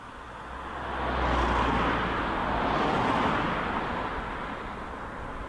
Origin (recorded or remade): recorded